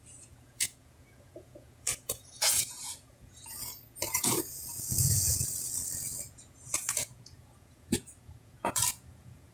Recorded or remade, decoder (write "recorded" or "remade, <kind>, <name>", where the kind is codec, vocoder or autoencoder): remade, vocoder, Vocos